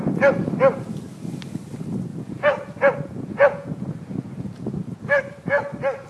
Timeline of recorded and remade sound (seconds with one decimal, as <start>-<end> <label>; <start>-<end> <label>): 0.0-2.1 recorded; 2.1-5.2 remade; 5.2-6.1 recorded